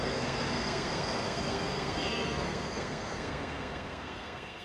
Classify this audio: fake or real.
fake